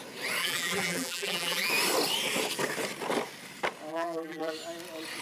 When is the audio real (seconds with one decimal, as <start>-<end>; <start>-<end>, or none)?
0.0-0.4; 1.7-3.9; 4.5-5.2